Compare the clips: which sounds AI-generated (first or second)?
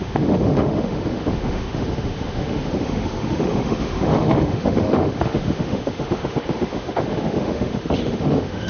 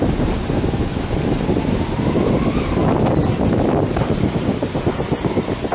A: first